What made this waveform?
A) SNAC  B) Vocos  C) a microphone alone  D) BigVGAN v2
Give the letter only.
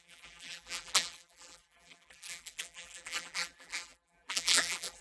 D